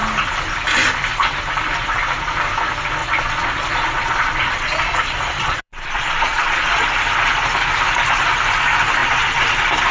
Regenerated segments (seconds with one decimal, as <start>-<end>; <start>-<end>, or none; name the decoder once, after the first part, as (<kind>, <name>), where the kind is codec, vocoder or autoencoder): 3.0-6.8 (vocoder, Vocos); 9.0-9.5

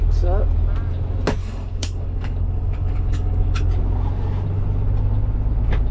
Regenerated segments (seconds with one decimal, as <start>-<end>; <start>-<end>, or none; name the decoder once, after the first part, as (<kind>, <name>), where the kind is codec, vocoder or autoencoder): 1.4-3.7 (codec, DAC)

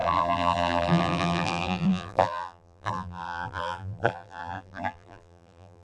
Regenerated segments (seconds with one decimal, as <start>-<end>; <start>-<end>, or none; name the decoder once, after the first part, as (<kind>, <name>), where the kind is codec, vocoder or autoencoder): 0.0-5.8 (vocoder, BigVGAN v2)